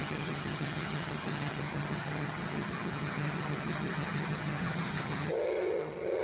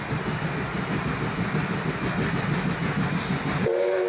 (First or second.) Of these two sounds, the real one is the second